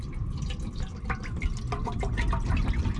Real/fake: real